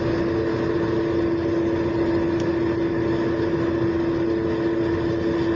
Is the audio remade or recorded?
recorded